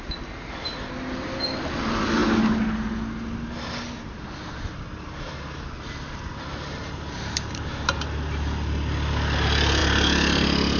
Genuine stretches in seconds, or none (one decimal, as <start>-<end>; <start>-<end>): 0.0-10.8